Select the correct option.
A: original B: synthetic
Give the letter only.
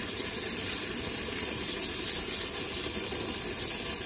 A